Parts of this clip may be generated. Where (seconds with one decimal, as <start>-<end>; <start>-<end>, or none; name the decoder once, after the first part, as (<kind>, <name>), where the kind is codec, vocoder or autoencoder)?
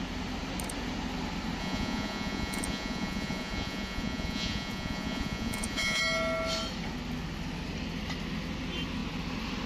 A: 1.6-6.0 (vocoder, Vocos)